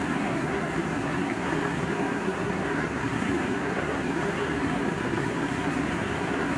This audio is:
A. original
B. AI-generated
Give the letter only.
B